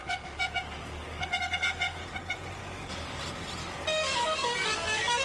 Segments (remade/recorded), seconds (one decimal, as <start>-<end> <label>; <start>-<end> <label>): 0.0-2.0 remade; 2.0-2.6 recorded; 2.6-3.2 remade; 3.2-3.6 recorded; 3.6-5.2 remade